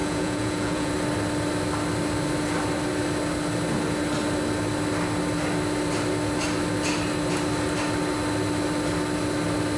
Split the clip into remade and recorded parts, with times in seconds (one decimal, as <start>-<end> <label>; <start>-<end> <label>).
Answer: 0.0-0.9 remade; 0.9-9.8 recorded